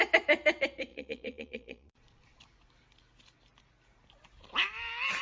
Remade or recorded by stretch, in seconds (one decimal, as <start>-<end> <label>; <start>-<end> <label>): 0.0-0.9 recorded; 0.9-2.4 remade; 2.4-5.2 recorded